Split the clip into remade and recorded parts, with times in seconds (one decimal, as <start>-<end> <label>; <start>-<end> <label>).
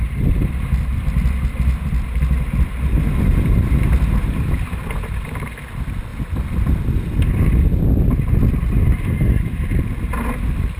0.0-10.8 recorded